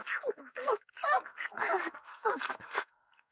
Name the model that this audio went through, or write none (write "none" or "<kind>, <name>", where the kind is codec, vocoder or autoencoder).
codec, SNAC